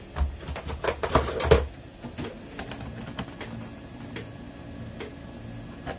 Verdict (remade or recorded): recorded